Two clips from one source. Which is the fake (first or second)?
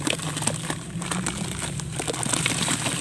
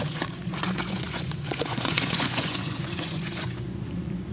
second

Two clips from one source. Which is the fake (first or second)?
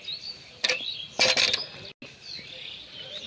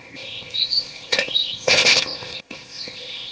second